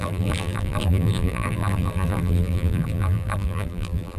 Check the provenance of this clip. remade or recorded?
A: remade